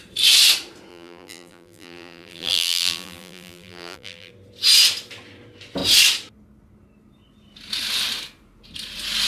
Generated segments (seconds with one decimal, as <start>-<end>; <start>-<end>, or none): 0.9-4.3